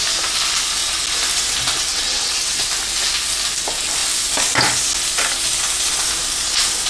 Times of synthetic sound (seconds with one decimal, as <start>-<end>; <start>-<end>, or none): 1.9-2.7